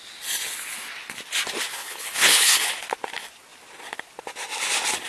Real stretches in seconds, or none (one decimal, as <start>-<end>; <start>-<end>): 0.0-1.7; 2.7-5.1